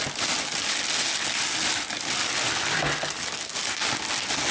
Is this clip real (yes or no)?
yes